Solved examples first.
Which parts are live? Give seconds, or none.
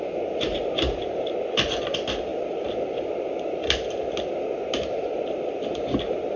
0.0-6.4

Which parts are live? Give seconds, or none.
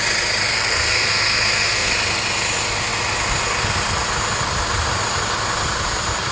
0.0-0.5; 1.9-6.3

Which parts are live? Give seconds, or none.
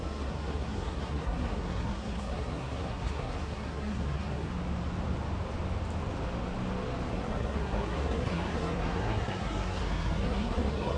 4.5-7.1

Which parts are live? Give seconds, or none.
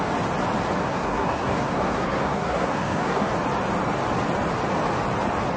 0.0-0.8; 3.3-5.6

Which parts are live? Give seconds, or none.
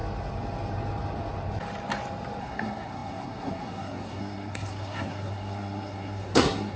0.0-2.4